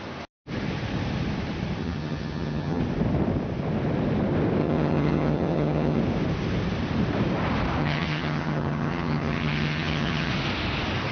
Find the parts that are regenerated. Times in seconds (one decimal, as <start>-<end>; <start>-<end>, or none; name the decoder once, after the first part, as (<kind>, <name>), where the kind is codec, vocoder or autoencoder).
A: 1.8-2.8 (vocoder, HiFi-GAN); 4.6-6.0; 7.8-10.3